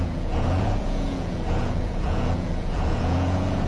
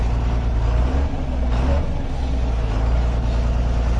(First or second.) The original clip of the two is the second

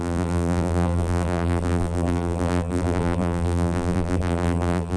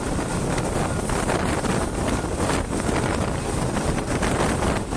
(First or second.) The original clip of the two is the second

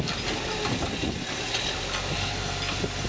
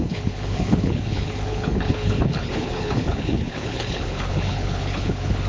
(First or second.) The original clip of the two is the first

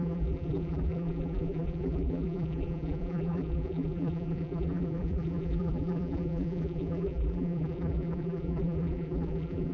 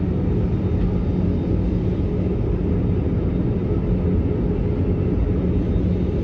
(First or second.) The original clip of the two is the second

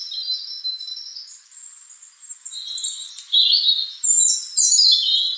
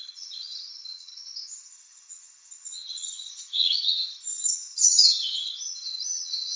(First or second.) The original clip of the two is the first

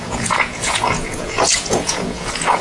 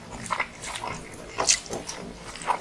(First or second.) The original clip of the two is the second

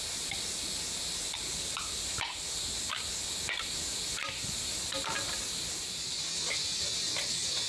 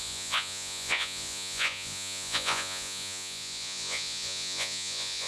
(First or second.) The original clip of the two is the first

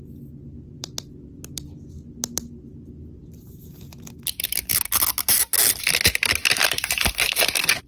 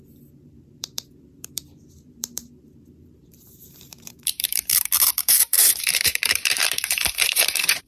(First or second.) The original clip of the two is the first